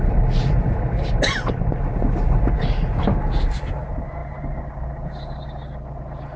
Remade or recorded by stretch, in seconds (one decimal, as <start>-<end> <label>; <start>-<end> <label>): 0.0-6.4 recorded